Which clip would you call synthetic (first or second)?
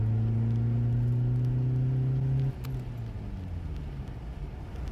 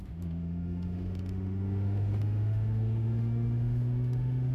second